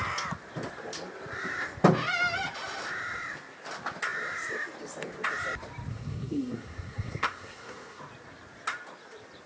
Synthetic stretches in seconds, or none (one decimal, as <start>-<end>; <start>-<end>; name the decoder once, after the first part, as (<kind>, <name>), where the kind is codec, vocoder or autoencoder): 5.9-8.0 (codec, SNAC)